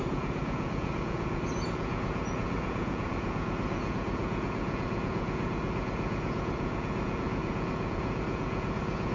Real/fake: fake